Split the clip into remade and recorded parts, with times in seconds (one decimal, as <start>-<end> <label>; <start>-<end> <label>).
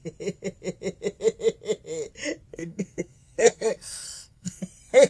0.0-2.5 recorded; 2.5-4.6 remade; 4.6-5.1 recorded